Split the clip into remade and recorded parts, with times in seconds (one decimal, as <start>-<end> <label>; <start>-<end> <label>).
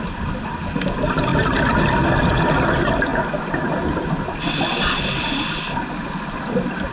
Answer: 0.0-6.9 recorded